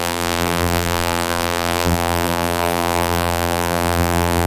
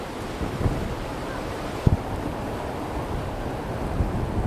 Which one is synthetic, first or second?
first